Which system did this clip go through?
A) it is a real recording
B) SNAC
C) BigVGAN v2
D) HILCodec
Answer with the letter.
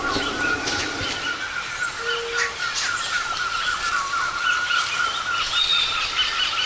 A